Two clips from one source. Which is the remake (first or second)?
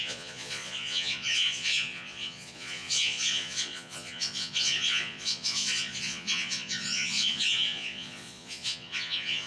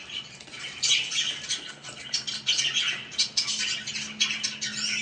first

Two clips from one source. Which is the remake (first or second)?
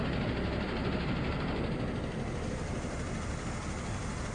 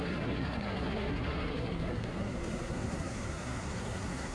second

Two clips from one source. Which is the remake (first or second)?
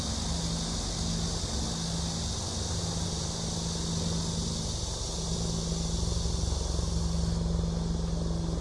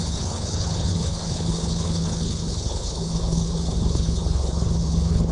second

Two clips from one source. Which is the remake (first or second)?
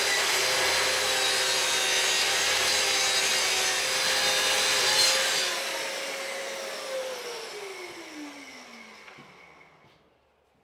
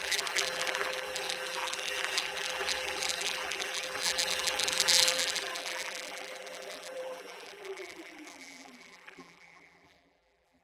second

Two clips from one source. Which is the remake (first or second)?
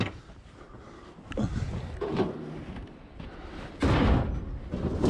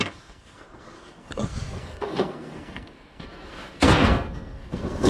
second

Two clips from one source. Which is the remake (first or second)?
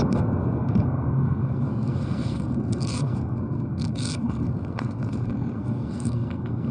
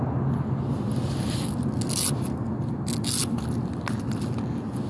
first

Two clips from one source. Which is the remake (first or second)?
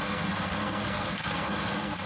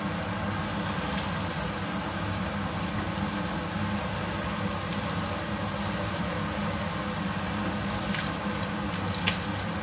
first